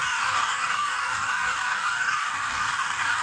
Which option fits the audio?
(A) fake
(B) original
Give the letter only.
A